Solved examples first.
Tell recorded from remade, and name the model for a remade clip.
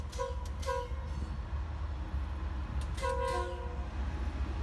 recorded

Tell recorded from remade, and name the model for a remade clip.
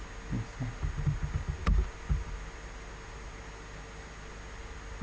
recorded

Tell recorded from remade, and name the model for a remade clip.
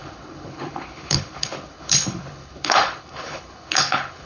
remade, codec, HILCodec